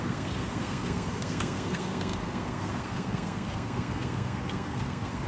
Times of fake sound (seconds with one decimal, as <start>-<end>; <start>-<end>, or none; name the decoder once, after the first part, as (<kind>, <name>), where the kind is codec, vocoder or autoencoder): 0.0-5.3 (codec, SNAC)